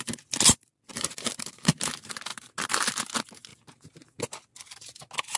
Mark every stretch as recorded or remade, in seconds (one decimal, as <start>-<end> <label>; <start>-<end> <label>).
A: 0.0-0.9 recorded; 0.9-1.9 remade; 1.9-3.5 recorded; 3.5-4.2 remade; 4.2-5.4 recorded